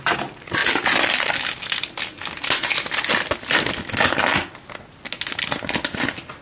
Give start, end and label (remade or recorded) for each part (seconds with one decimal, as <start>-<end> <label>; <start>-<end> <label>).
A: 0.0-6.4 recorded